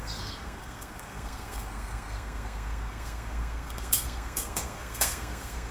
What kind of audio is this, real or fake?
fake